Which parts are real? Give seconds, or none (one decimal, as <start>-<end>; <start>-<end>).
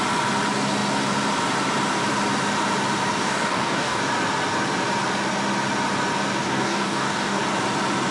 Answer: 0.0-3.2; 4.0-6.4; 7.4-8.1